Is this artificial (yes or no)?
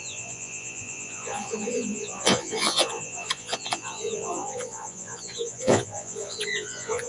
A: yes